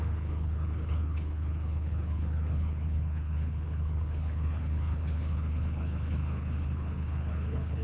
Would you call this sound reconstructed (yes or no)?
yes